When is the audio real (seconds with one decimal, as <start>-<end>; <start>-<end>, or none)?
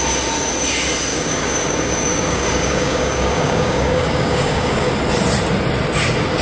0.0-1.1; 4.9-6.4